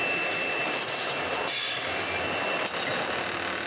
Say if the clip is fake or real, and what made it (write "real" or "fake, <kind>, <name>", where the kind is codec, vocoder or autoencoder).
real